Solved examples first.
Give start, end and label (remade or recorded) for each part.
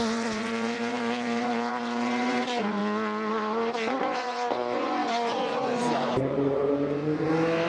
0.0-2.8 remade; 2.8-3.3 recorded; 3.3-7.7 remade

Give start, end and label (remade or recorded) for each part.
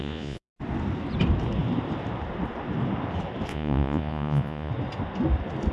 0.0-0.5 remade; 0.5-3.5 recorded; 3.5-4.7 remade; 4.7-5.7 recorded